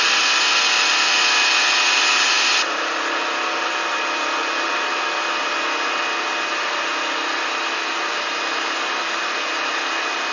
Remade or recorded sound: recorded